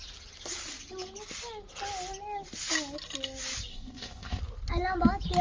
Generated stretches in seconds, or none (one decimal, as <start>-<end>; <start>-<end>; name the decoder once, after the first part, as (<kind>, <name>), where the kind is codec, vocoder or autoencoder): 3.7-4.4 (codec, ZipCodec)